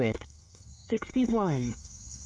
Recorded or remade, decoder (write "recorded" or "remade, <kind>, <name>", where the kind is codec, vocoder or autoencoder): remade, codec, SNAC